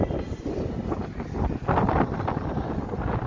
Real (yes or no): yes